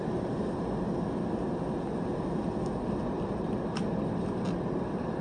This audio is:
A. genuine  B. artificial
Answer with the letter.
A